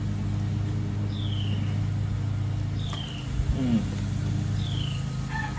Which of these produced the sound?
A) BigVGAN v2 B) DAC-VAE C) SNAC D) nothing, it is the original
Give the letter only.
D